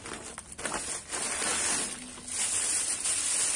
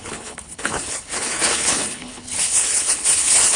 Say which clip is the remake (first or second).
second